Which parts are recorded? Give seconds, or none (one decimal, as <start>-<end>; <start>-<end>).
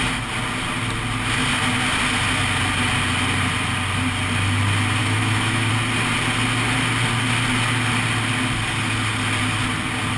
0.0-5.0; 5.7-10.2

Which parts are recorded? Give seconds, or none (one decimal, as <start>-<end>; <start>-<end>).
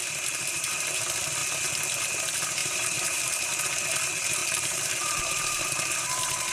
1.0-2.6; 3.5-4.4; 5.7-6.5